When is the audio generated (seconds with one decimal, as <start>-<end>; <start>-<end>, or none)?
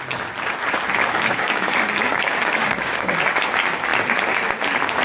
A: 1.0-3.2